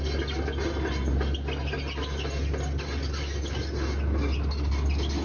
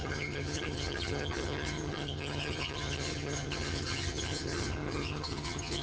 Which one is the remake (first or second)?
second